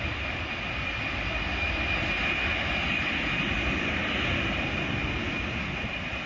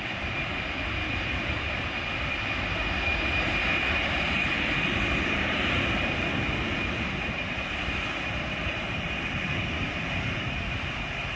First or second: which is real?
first